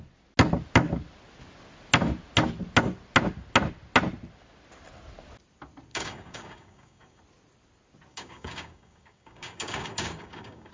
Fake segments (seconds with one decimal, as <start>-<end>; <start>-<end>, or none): 5.9-7.2; 8.1-10.7